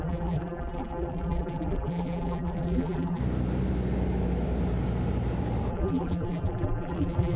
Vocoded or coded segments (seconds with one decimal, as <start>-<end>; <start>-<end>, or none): 0.0-3.2; 5.7-7.4